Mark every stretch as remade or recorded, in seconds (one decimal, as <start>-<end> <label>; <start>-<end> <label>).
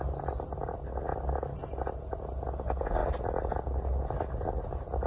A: 0.0-5.1 recorded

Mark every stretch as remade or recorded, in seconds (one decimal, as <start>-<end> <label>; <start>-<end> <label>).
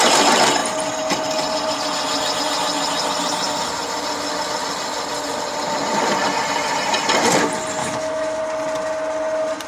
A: 0.0-7.8 recorded; 7.8-8.4 remade; 8.4-9.7 recorded